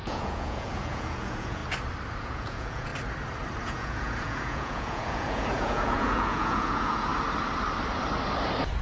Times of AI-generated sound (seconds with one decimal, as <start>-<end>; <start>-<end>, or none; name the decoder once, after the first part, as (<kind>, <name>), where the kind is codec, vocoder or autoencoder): 0.0-1.6 (vocoder, Vocos); 2.2-2.9; 3.6-7.1